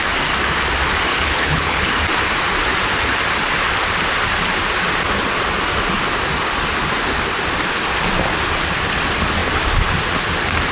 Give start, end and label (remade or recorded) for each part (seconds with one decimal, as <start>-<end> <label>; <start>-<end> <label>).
0.0-1.1 recorded; 1.1-1.9 remade; 1.9-10.7 recorded